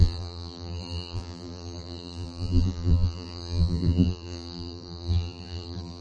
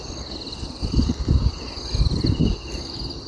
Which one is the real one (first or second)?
second